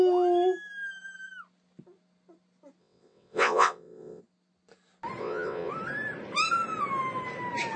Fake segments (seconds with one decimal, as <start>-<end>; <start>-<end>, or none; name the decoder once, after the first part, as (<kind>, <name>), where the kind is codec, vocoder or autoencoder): 2.8-4.2 (vocoder, WaveNeXt); 5.2-5.7